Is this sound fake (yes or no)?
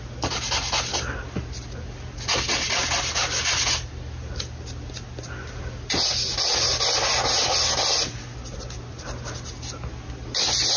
no